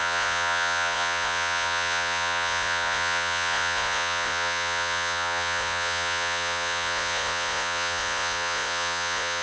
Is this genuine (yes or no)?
no